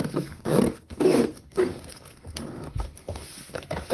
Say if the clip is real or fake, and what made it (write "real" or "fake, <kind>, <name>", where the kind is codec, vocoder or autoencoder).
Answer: fake, codec, SNAC